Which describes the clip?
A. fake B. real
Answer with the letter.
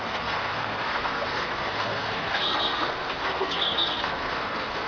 A